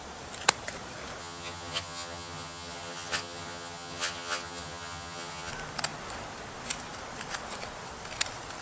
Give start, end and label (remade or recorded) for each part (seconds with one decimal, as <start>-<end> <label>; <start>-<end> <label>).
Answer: 0.0-1.2 recorded; 1.2-5.5 remade; 5.5-8.6 recorded